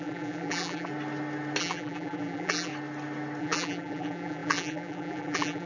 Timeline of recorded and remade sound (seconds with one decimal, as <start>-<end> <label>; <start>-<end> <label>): 0.0-0.9 remade; 0.9-1.6 recorded; 1.6-2.7 remade; 2.7-3.4 recorded; 3.4-5.7 remade